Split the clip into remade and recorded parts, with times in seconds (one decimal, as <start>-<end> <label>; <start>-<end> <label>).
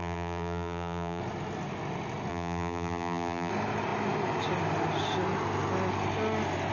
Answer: 0.0-1.2 remade; 1.2-2.3 recorded; 2.3-3.5 remade; 3.5-6.7 recorded